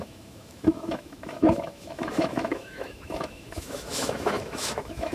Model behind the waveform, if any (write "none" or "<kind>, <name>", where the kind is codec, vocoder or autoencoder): autoencoder, DAC-VAE